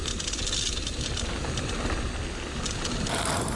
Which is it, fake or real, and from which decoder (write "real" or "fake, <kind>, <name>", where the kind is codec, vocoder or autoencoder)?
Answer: real